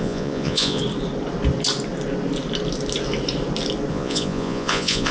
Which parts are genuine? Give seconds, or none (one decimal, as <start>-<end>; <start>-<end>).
0.8-3.9